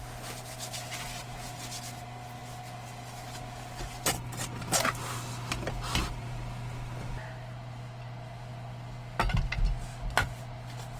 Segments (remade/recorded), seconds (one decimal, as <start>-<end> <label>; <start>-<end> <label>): 0.0-11.0 recorded